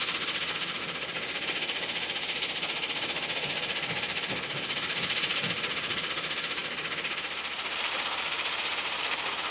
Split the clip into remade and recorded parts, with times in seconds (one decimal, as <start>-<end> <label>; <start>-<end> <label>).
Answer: 0.0-9.5 recorded